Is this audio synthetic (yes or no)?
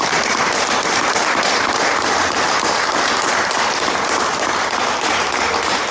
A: no